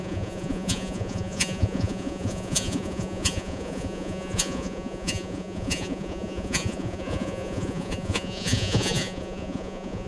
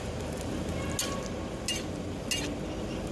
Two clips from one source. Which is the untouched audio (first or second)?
second